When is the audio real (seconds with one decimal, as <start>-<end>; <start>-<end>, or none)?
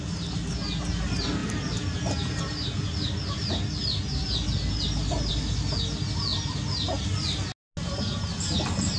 0.0-9.0